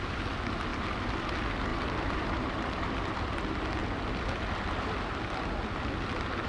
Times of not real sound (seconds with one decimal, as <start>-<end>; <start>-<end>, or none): 1.7-2.9